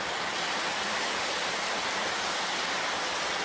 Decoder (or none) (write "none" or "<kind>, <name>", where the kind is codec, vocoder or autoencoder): none